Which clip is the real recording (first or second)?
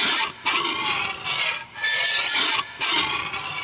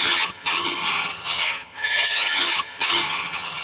first